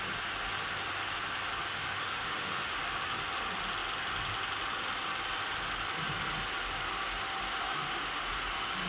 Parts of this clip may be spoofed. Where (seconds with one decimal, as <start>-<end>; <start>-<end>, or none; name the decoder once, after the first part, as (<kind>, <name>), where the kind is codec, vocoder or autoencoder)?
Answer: 1.7-2.8 (autoencoder, DAC-VAE); 7.6-8.3